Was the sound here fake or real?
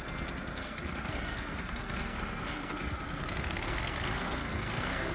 fake